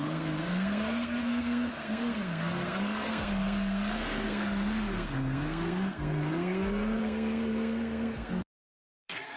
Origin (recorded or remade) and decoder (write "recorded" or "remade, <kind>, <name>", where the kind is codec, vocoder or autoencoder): remade, codec, SNAC